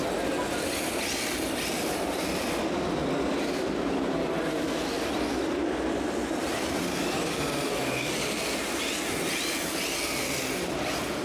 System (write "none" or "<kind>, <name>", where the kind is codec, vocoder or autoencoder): none